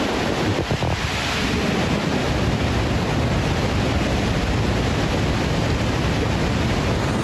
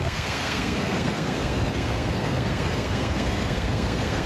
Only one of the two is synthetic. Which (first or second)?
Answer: second